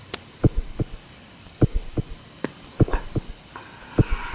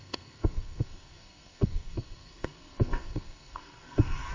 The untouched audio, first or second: first